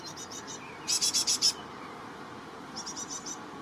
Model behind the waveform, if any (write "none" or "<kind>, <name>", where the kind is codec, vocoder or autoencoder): vocoder, BigVGAN v2